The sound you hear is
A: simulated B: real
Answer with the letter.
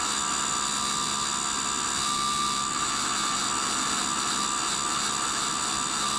B